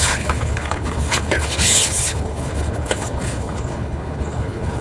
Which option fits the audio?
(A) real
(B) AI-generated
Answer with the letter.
B